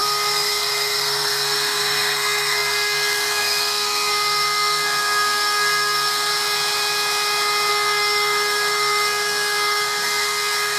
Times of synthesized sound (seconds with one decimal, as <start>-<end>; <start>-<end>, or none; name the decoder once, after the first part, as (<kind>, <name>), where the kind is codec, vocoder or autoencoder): 0.0-6.3 (codec, SNAC); 7.7-10.8